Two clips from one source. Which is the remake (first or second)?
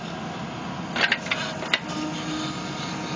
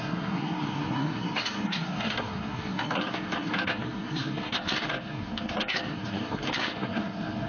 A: second